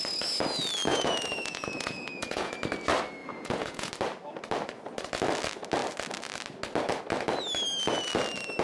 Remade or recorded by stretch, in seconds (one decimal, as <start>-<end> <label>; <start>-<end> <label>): 0.0-0.9 recorded; 0.9-2.5 remade; 2.5-3.2 recorded; 3.2-3.9 remade; 3.9-8.6 recorded